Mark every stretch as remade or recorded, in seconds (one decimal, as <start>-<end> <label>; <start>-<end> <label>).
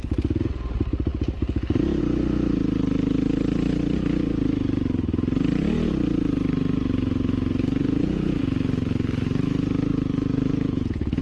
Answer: 0.0-7.8 recorded; 7.8-8.4 remade; 8.4-9.9 recorded; 9.9-11.2 remade